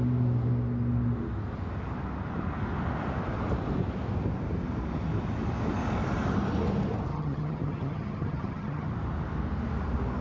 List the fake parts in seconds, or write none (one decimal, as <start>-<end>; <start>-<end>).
7.1-8.9